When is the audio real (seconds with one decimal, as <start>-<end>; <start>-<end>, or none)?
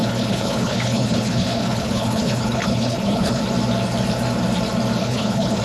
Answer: 3.4-5.0